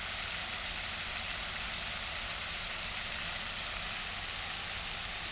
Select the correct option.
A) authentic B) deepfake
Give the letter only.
A